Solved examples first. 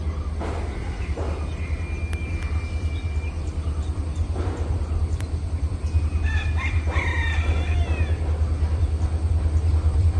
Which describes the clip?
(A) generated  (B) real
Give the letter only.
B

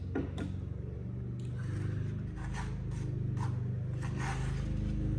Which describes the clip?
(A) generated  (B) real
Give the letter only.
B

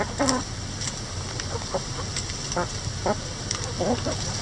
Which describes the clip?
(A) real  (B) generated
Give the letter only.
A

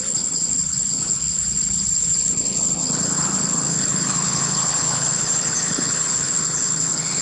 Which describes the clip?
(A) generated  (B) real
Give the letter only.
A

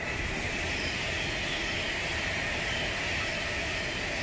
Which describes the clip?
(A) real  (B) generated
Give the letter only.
A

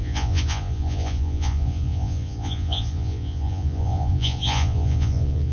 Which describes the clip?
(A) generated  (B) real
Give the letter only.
A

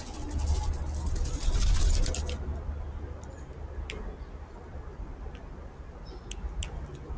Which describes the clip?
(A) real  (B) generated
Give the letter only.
A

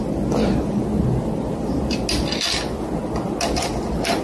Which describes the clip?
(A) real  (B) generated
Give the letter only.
A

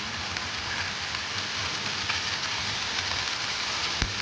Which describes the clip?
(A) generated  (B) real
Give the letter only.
B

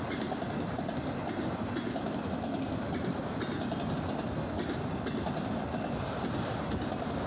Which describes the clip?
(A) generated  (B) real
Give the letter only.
B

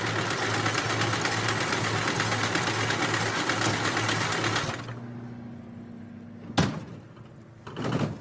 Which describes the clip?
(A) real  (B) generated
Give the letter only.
A